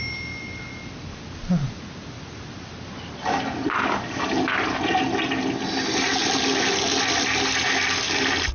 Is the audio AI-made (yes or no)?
no